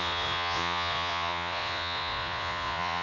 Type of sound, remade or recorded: remade